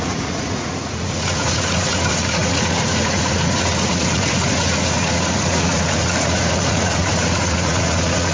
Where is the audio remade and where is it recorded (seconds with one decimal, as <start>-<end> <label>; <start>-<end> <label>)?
0.0-8.3 remade